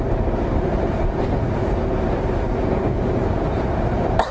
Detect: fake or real real